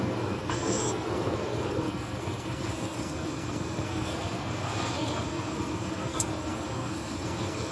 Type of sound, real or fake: fake